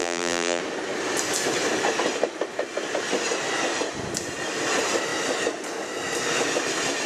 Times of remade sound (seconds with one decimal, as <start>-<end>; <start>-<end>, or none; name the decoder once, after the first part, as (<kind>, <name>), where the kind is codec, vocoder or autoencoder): 0.0-0.6 (vocoder, BigVGAN v2)